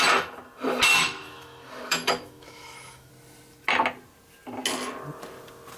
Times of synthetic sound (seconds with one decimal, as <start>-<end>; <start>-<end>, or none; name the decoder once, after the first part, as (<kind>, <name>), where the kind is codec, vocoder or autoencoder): 0.9-3.1 (autoencoder, DAC-VAE)